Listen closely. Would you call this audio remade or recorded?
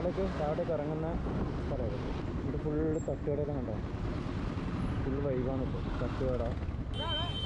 recorded